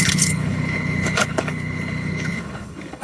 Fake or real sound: fake